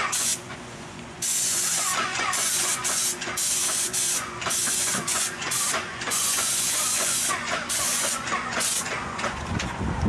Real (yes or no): no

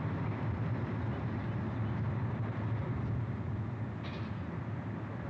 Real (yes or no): yes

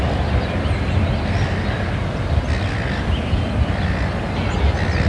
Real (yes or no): yes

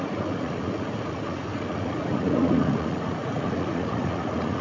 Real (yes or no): no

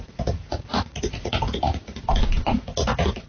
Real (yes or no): no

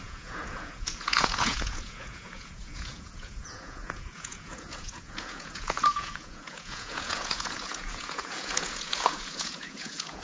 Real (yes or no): no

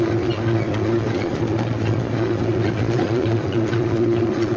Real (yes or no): no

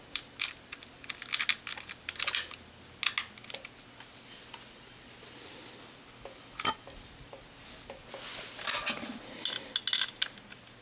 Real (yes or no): yes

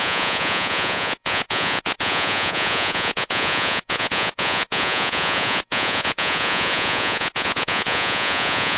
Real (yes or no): no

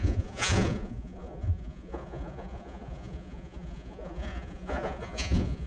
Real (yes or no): no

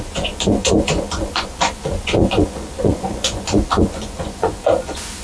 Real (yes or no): no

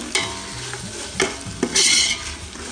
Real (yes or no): yes